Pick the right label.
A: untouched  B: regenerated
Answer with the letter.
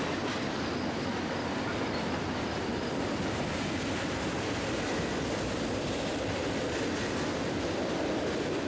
A